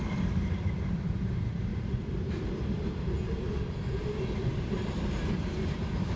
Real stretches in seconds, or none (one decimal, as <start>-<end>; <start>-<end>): 1.7-4.0